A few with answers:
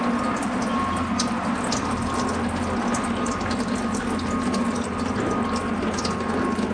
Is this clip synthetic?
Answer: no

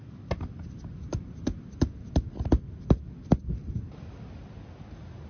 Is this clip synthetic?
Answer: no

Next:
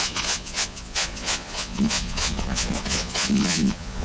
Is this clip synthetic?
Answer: yes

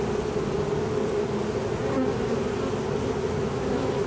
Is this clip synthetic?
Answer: no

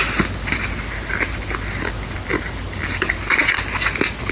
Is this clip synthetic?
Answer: no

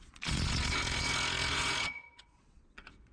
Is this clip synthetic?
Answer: yes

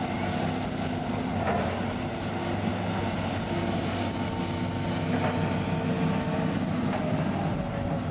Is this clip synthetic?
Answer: no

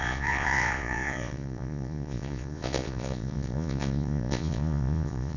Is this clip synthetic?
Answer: yes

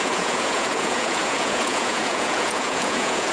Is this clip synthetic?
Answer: yes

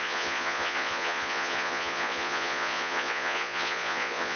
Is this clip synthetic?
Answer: yes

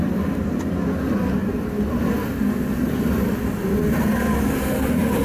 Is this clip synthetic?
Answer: no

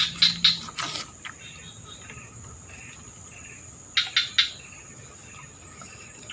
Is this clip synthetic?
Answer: no